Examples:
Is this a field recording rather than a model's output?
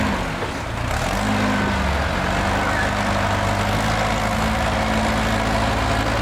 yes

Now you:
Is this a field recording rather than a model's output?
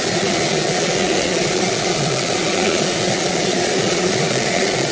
no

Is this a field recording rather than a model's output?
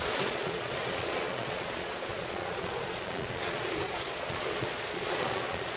no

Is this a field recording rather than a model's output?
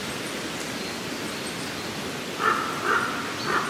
yes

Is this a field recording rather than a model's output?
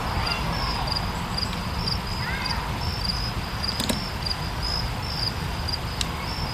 yes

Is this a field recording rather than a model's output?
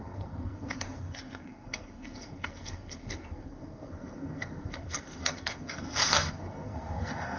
no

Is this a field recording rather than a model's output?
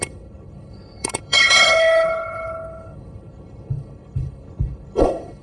no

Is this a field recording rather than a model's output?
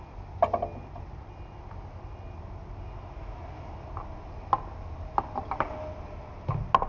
yes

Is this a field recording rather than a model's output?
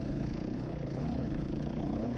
no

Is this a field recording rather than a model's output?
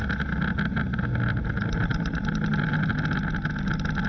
yes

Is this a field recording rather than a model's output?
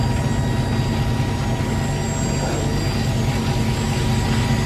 yes